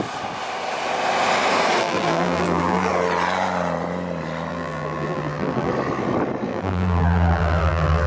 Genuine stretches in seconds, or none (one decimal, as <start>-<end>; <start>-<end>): 0.0-1.8; 2.9-4.5; 5.7-6.5